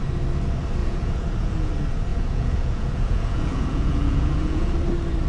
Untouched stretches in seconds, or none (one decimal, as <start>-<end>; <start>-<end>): 0.0-0.8; 1.7-2.1; 4.7-5.3